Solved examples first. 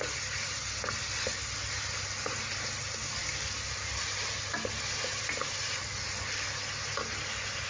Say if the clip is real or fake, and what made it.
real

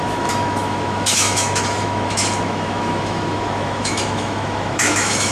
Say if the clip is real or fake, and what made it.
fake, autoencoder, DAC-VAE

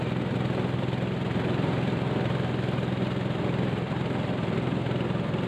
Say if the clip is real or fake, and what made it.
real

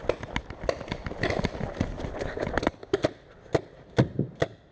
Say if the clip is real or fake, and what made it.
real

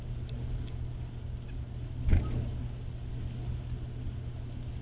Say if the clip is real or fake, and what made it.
real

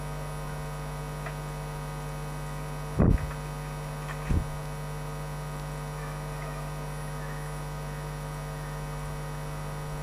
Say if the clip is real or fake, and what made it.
real